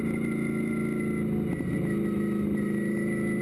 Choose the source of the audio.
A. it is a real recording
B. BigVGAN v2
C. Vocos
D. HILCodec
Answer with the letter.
A